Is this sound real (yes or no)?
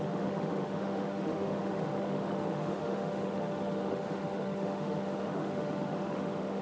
no